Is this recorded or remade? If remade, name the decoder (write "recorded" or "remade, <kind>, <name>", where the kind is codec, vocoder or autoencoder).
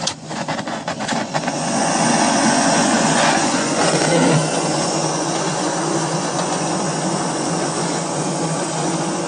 remade, vocoder, Vocos